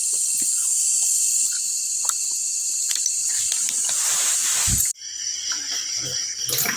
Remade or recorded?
remade